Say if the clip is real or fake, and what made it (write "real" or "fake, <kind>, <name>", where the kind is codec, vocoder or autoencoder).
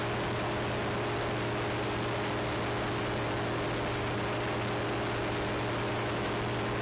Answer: real